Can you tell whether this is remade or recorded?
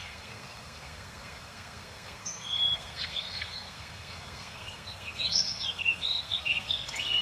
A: remade